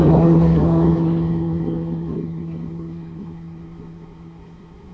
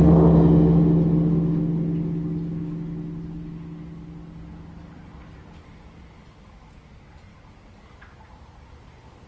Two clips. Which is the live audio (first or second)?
second